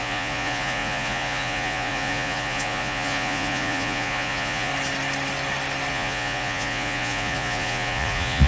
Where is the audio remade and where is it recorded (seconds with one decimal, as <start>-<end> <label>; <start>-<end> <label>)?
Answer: 0.0-4.7 remade; 4.7-5.9 recorded; 5.9-8.5 remade